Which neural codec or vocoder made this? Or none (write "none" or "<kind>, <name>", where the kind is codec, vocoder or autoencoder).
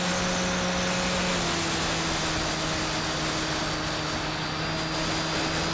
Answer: none